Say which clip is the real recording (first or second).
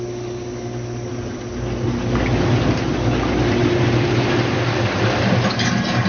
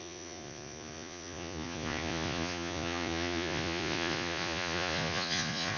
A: first